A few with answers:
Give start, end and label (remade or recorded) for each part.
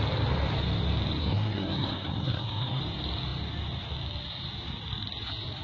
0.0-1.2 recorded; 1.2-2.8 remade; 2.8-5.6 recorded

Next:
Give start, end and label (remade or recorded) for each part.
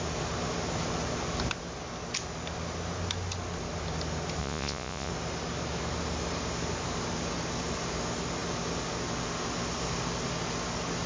0.0-4.4 recorded; 4.4-5.1 remade; 5.1-11.1 recorded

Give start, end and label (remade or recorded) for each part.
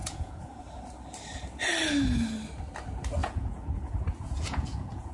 0.0-0.6 remade; 0.6-3.2 recorded; 3.2-5.1 remade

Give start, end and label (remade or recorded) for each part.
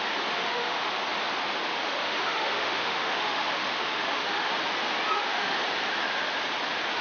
0.0-0.4 recorded; 0.4-0.9 remade; 0.9-1.7 recorded; 1.7-4.5 remade; 4.5-5.1 recorded; 5.1-5.6 remade; 5.6-7.0 recorded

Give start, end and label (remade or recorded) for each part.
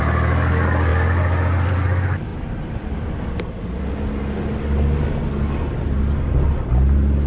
0.0-2.3 recorded; 2.3-3.8 remade; 3.8-7.3 recorded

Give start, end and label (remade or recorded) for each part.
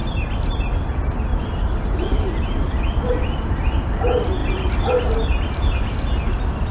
0.0-6.7 recorded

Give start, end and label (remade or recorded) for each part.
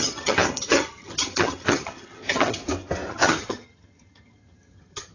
0.0-2.6 remade; 2.6-3.1 recorded; 3.1-5.1 remade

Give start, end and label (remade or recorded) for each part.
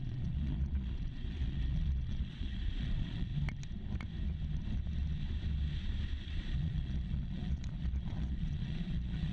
0.0-3.3 remade; 3.3-6.2 recorded; 6.2-9.3 remade